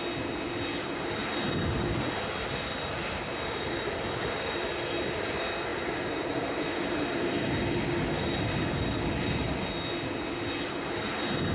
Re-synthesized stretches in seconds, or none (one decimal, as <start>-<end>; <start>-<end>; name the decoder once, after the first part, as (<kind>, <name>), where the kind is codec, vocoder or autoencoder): none